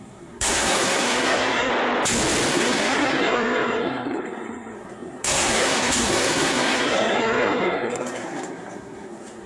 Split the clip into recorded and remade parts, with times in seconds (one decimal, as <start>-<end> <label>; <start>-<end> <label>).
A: 0.0-1.7 remade; 1.7-2.5 recorded; 2.5-9.5 remade